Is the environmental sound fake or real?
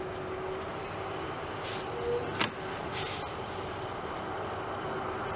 real